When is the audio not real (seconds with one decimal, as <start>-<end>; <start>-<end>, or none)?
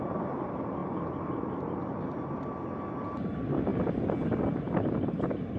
none